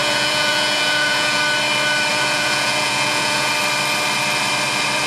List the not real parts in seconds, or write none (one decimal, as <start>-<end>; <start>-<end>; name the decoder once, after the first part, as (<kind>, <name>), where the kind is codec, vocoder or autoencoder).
0.0-1.4 (vocoder, Vocos); 2.1-3.5